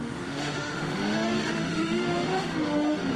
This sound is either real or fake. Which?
fake